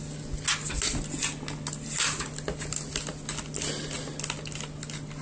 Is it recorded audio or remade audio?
recorded